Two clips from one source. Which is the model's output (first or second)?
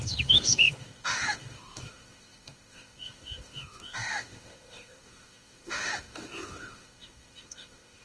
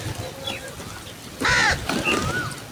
first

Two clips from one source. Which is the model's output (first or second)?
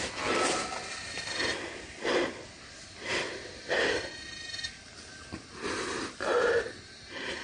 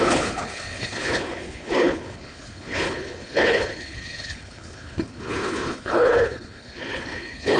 second